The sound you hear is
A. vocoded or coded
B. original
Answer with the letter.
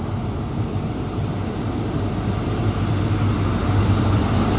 B